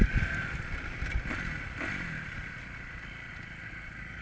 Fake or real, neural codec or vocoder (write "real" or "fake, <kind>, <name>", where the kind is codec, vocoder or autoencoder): real